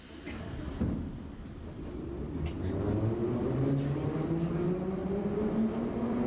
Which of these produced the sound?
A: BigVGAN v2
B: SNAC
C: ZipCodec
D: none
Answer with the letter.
D